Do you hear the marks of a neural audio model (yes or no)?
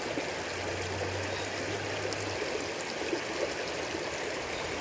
no